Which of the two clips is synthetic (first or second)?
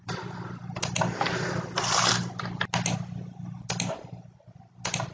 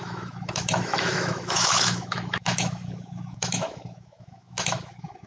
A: second